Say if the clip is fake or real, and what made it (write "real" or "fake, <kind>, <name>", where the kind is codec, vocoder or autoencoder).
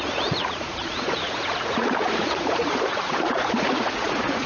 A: fake, vocoder, Vocos